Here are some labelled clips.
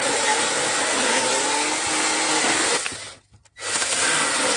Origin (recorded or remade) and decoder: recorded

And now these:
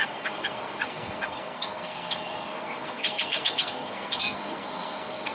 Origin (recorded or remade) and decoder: remade, codec, SNAC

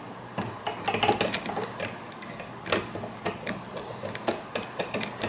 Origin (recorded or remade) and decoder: recorded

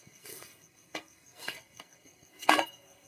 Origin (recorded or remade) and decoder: remade, codec, SNAC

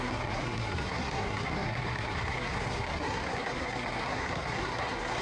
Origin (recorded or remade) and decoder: remade, codec, SNAC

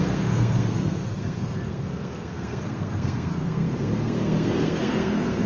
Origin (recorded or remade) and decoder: remade, codec, SNAC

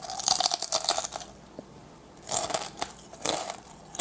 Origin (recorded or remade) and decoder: recorded